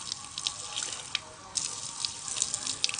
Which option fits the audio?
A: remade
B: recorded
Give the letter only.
B